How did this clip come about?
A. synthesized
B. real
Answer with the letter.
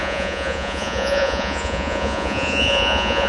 A